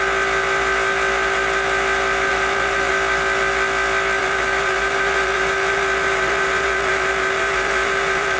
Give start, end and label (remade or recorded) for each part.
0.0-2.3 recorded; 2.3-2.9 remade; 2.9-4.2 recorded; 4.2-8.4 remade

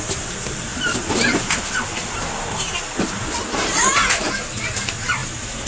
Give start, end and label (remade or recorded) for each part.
0.0-5.7 recorded

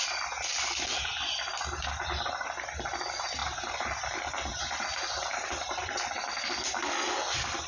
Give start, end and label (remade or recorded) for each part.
0.0-3.4 recorded; 3.4-6.0 remade; 6.0-7.7 recorded